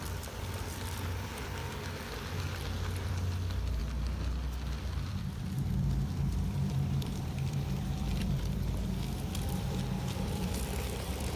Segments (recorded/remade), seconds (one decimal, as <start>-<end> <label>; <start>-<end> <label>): 0.0-1.3 remade; 1.3-3.0 recorded; 3.0-3.8 remade; 3.8-5.1 recorded; 5.1-11.4 remade